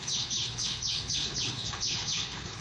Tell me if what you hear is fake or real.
fake